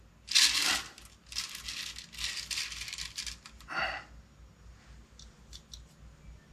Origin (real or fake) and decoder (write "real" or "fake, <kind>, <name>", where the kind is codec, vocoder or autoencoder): real